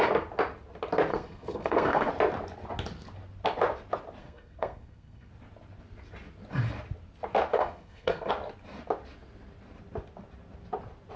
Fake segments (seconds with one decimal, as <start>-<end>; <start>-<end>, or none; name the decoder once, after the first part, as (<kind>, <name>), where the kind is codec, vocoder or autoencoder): 1.1-2.1 (codec, SNAC); 4.2-5.3; 7.5-8.3